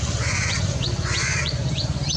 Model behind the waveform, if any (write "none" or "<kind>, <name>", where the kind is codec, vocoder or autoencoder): vocoder, Vocos